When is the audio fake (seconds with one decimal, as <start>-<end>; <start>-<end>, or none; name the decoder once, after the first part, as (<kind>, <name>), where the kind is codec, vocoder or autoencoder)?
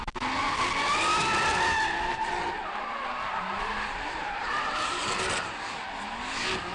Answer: 1.5-5.5 (vocoder, BigVGAN v2)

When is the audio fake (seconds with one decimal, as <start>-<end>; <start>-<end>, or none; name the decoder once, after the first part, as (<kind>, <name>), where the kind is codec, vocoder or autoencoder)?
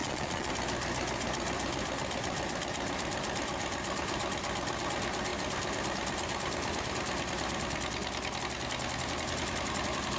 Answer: 0.0-0.5 (vocoder, Vocos)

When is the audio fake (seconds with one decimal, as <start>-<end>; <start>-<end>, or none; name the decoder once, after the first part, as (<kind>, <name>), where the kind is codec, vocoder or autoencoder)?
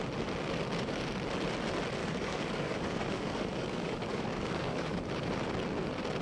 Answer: 2.0-5.1 (codec, DAC)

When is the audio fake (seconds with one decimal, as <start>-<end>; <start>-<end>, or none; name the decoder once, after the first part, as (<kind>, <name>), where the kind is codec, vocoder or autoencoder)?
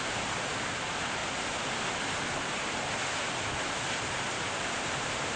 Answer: 0.0-1.2 (vocoder, BigVGAN v2); 4.0-5.4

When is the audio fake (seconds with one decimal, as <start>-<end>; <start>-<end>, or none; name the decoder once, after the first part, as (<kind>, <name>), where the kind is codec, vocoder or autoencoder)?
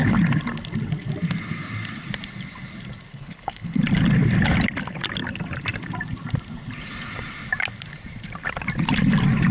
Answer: 3.1-3.8 (codec, HILCodec)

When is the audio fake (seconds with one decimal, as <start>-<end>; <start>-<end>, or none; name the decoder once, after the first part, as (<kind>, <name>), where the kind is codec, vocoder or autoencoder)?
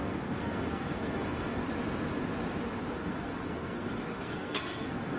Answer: 0.0-1.6 (codec, SNAC); 2.9-5.2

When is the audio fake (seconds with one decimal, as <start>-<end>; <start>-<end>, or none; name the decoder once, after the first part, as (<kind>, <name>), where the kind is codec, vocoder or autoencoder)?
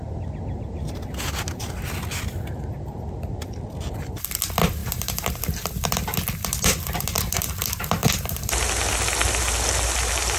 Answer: 4.8-5.4 (vocoder, BigVGAN v2); 8.0-8.5